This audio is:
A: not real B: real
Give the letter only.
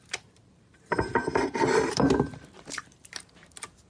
A